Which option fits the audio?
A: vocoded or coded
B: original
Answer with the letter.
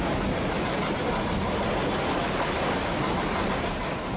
B